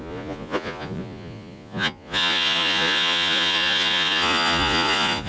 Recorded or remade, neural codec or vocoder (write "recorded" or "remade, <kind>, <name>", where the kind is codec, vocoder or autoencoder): remade, vocoder, Vocos